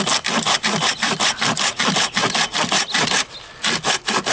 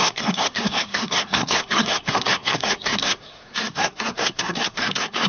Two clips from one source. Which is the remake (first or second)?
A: second